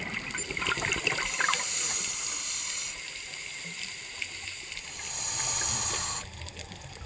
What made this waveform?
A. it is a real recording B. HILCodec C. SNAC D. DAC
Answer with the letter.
A